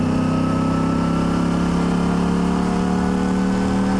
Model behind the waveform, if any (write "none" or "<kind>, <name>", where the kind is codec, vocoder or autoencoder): none